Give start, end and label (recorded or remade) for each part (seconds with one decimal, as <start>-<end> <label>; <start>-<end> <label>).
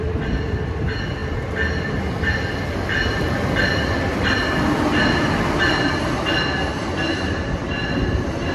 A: 0.0-8.5 recorded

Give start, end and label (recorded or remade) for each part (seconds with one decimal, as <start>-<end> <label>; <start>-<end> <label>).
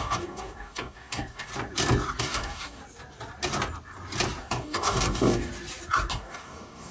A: 0.0-1.5 remade; 1.5-2.2 recorded; 2.2-2.8 remade; 2.8-4.4 recorded; 4.4-5.5 remade; 5.5-6.1 recorded; 6.1-6.9 remade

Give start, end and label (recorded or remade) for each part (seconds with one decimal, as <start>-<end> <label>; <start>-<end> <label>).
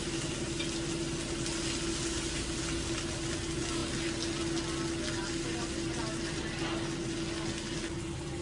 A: 0.0-8.4 recorded